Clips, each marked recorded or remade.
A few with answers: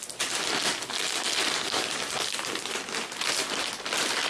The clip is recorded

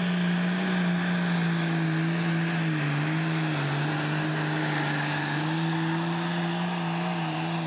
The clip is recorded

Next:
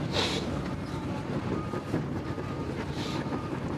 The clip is remade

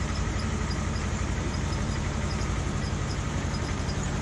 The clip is remade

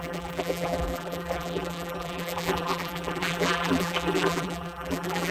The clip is remade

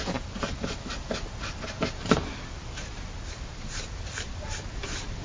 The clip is remade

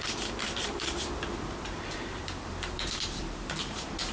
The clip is remade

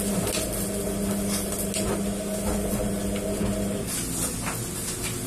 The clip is recorded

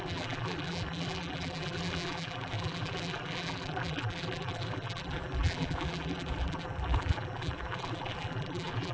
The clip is remade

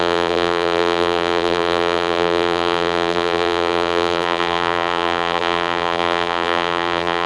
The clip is remade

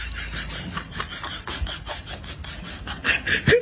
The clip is recorded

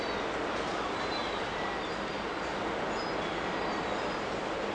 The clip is recorded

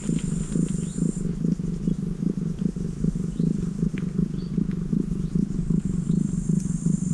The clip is recorded